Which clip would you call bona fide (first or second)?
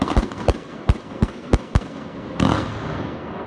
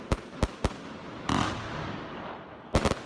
second